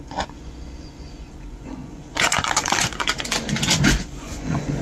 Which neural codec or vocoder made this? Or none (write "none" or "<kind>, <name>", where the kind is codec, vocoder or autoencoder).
vocoder, Vocos